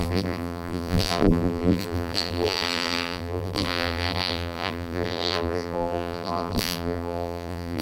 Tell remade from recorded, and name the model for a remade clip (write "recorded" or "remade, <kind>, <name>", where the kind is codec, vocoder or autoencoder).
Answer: remade, vocoder, BigVGAN v2